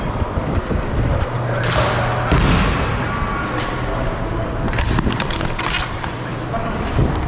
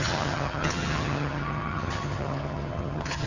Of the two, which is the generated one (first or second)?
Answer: second